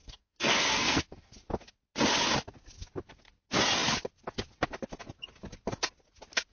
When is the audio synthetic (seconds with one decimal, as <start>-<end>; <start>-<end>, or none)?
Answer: 0.0-1.4